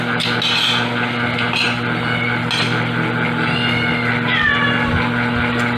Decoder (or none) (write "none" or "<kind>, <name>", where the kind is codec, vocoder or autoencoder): none